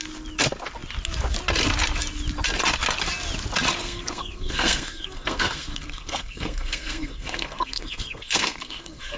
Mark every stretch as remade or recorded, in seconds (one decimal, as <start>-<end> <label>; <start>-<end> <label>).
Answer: 0.0-3.8 recorded; 3.8-9.2 remade